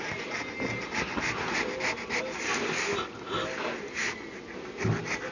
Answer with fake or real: real